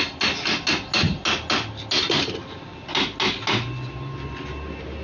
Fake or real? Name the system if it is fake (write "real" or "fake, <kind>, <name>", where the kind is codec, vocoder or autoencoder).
real